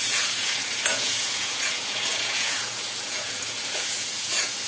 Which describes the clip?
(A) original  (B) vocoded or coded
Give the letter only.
B